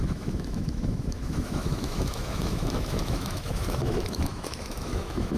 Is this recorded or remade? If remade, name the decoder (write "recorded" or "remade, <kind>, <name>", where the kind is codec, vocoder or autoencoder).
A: remade, autoencoder, DAC-VAE